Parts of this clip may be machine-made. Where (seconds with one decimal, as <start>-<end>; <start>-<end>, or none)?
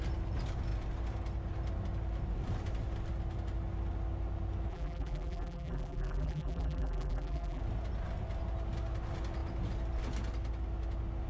4.7-7.6